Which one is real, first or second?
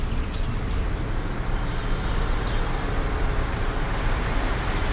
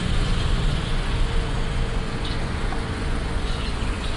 first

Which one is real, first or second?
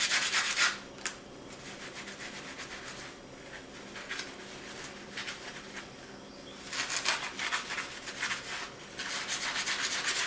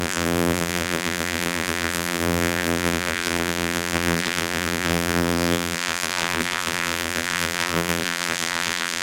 first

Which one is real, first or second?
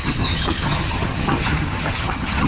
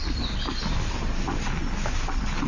second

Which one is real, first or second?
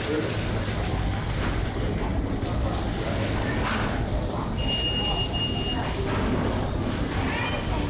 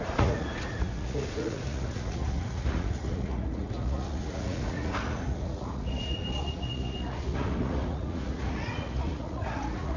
first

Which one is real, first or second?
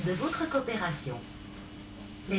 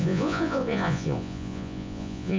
first